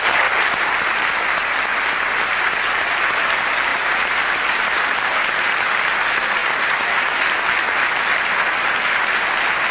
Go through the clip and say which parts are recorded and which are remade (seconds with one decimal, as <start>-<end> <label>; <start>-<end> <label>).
0.0-3.7 recorded; 3.7-5.8 remade; 5.8-6.4 recorded; 6.4-7.0 remade; 7.0-9.7 recorded